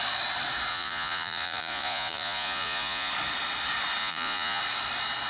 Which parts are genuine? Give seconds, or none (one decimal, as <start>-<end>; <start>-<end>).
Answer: 0.0-0.7; 3.1-4.0; 4.6-5.3